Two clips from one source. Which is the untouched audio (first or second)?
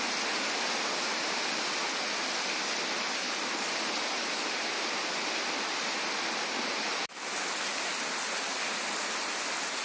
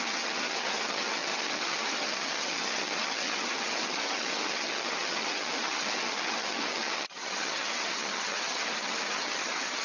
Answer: first